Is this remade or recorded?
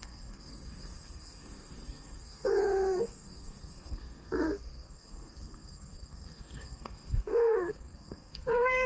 remade